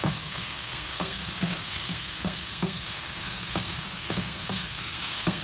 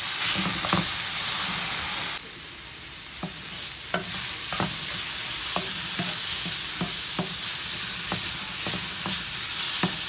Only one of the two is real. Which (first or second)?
second